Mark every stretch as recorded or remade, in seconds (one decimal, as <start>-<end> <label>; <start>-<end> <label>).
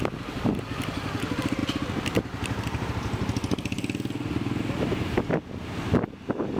0.0-6.6 recorded